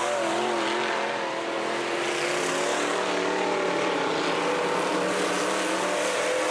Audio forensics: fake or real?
real